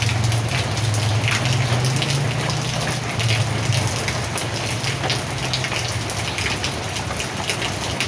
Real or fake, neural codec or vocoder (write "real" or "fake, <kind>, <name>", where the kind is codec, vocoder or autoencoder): real